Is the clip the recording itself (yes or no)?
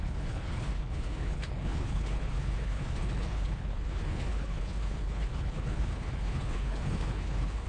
no